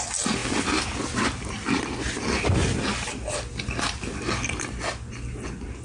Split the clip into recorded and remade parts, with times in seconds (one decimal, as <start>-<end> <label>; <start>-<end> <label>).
0.0-5.8 recorded